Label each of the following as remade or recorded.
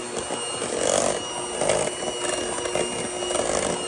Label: recorded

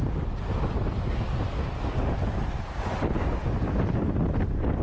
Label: recorded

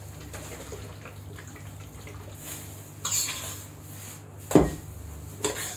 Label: recorded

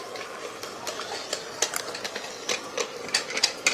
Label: recorded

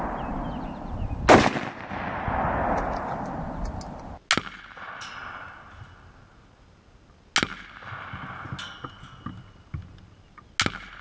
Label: recorded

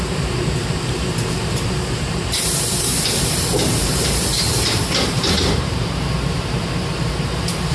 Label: remade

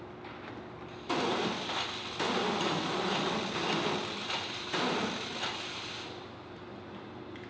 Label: recorded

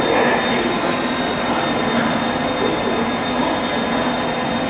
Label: recorded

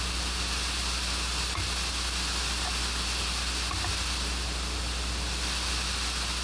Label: recorded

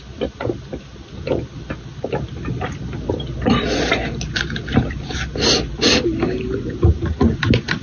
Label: recorded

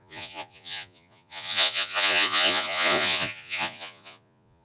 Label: remade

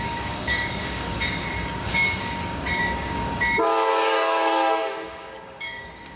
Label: remade